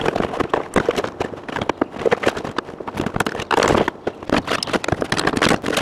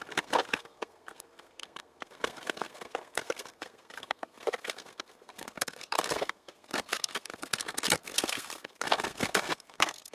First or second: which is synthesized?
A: second